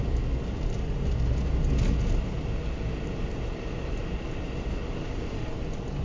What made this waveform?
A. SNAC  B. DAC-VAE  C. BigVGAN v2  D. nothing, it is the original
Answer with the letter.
D